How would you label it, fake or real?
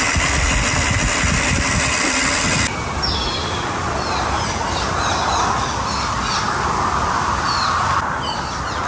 real